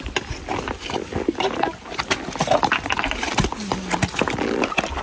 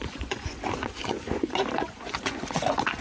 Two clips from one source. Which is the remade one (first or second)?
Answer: second